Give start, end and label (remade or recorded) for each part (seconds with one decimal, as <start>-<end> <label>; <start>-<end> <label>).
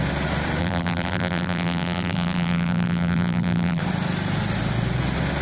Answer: 0.0-0.6 recorded; 0.6-3.8 remade; 3.8-5.4 recorded